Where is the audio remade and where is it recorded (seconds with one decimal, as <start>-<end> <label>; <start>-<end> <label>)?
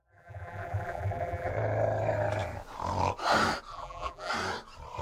0.0-1.5 remade; 1.5-3.7 recorded; 3.7-4.3 remade; 4.3-5.0 recorded